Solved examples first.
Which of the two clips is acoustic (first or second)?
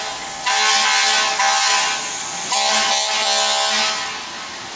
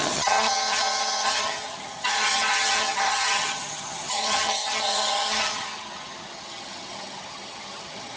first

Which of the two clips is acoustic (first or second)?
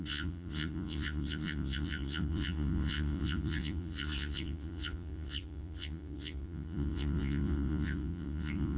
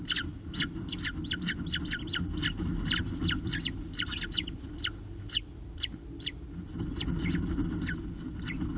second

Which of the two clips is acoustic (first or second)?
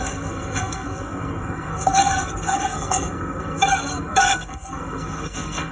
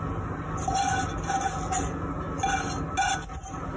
second